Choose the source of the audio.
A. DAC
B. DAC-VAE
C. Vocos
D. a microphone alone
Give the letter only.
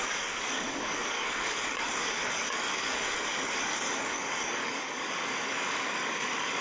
A